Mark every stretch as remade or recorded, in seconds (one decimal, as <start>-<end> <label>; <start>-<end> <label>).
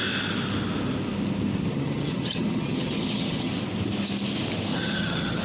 0.0-1.7 recorded; 1.7-3.5 remade; 3.5-4.7 recorded; 4.7-5.4 remade